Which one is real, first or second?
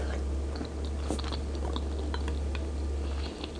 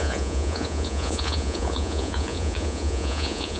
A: first